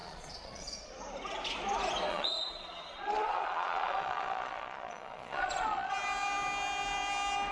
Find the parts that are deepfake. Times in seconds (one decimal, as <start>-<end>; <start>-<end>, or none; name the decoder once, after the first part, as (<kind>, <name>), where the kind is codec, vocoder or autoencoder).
0.0-0.9 (vocoder, Vocos); 2.1-5.9